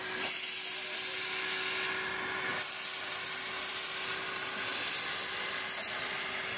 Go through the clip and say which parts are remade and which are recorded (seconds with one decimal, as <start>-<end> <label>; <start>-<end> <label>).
0.0-6.6 recorded